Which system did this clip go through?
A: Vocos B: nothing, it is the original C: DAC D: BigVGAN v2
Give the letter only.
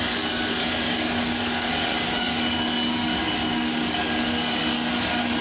C